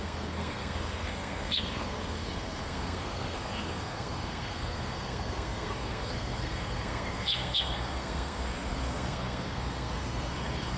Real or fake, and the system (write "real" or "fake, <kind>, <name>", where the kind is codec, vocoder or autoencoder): fake, codec, SNAC